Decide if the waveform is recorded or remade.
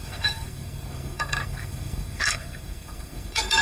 remade